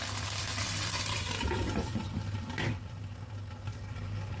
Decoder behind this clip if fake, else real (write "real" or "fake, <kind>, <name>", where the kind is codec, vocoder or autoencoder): fake, vocoder, BigVGAN v2